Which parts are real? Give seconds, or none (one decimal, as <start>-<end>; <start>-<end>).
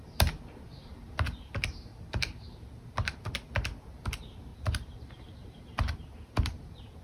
0.0-1.9; 3.2-4.5